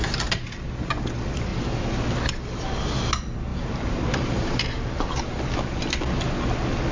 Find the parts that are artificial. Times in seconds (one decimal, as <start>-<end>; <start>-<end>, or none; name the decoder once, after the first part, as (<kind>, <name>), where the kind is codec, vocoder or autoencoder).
1.5-2.4 (vocoder, BigVGAN v2); 3.5-5.4